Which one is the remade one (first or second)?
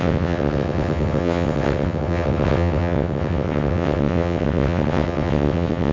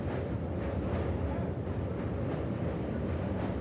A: first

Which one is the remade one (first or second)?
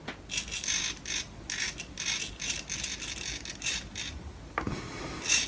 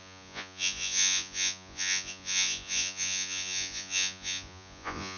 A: second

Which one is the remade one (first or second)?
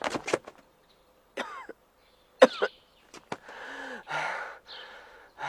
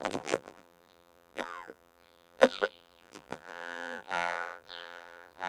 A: second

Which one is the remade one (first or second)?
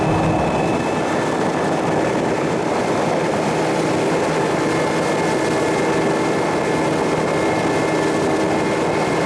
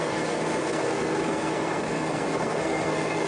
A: second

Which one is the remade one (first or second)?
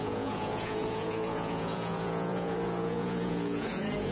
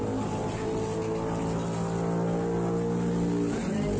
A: first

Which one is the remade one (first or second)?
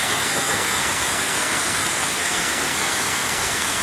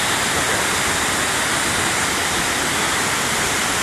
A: first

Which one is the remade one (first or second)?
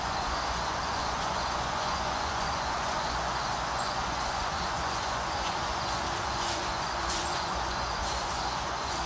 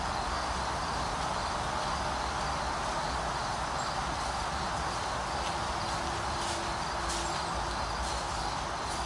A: first